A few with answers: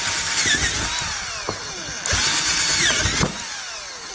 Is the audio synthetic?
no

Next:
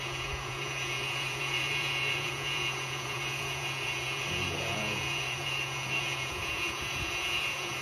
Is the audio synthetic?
yes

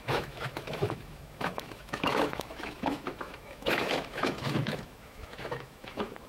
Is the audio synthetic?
yes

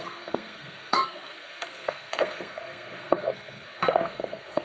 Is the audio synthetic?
yes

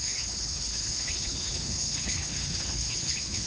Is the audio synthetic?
yes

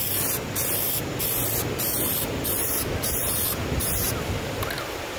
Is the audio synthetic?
no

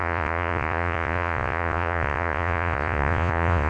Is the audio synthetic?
yes